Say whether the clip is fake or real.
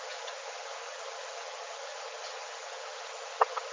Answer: fake